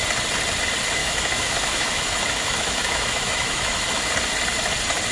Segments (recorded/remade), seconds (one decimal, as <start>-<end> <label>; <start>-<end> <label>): 0.0-1.0 recorded; 1.0-4.1 remade; 4.1-5.1 recorded